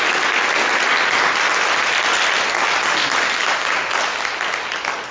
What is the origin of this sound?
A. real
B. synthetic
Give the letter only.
A